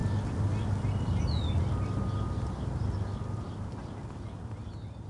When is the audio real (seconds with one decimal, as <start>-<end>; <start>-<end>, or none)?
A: 0.0-5.1

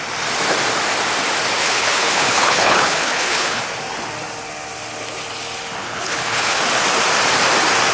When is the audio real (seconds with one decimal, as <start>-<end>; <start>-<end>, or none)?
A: 0.0-1.6; 3.6-5.8; 6.6-7.9

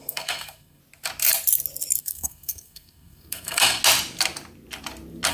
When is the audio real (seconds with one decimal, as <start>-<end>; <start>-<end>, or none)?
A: 0.8-2.0; 3.8-5.3